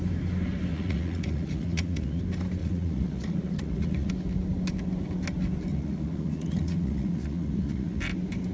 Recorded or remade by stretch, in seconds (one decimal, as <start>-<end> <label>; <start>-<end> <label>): 0.0-0.7 recorded; 0.7-2.2 remade; 2.2-2.6 recorded; 2.6-4.1 remade; 4.1-5.7 recorded; 5.7-8.0 remade; 8.0-8.5 recorded